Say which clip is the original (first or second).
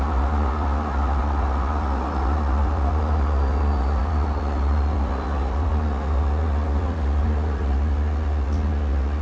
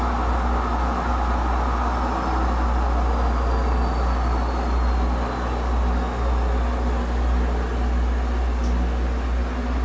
second